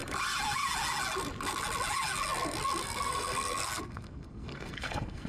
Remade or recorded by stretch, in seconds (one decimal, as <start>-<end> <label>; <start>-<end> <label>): 0.0-2.8 recorded; 2.8-5.3 remade